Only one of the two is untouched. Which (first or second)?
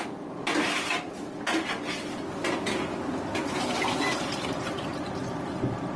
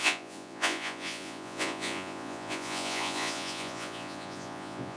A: first